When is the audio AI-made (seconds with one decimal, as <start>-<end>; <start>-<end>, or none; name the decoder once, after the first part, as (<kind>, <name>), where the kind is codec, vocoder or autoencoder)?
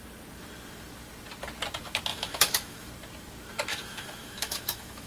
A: 2.1-2.9 (autoencoder, DAC-VAE); 3.7-5.1